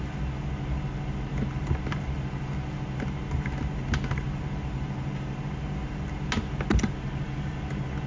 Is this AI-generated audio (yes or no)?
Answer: no